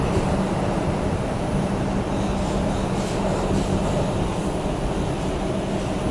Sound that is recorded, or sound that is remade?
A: recorded